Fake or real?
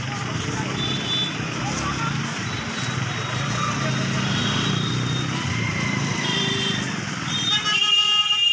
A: real